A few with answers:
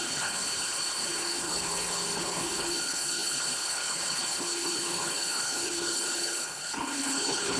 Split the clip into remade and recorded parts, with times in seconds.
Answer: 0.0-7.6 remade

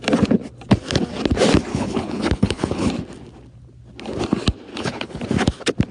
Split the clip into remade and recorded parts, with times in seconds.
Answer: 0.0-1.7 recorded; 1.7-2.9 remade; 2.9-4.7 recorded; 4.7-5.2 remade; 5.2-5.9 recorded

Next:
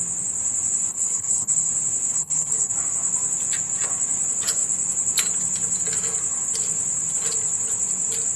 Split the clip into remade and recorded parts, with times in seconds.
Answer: 0.0-0.9 recorded; 0.9-1.7 remade; 1.7-2.1 recorded; 2.1-2.7 remade; 2.7-8.4 recorded